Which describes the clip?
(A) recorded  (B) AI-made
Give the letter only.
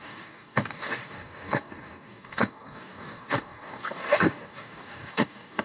B